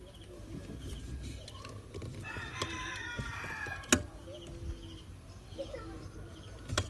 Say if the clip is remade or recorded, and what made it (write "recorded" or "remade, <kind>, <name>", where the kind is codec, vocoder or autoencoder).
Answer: recorded